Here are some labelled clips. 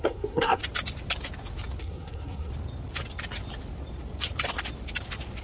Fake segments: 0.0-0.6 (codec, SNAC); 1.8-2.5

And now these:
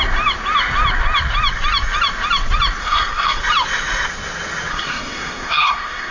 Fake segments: 2.8-3.4 (codec, SNAC); 4.7-6.1

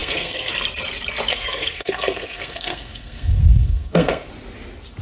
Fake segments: 0.0-0.5 (codec, SNAC); 1.3-4.3

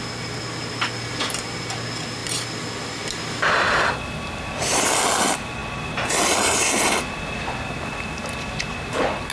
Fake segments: none

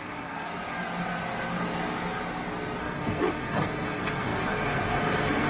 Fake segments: 0.0-0.5 (codec, SNAC); 2.8-5.5

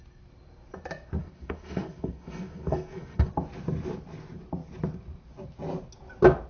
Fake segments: 1.2-3.3 (codec, SNAC)